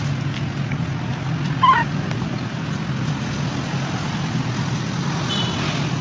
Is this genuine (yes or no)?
yes